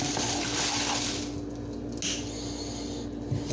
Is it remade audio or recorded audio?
recorded